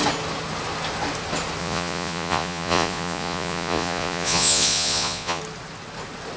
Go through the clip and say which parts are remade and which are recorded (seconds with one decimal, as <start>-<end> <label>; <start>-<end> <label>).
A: 0.0-1.6 recorded; 1.6-5.4 remade; 5.4-6.4 recorded